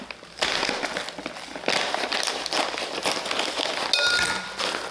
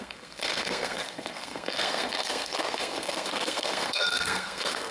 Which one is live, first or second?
first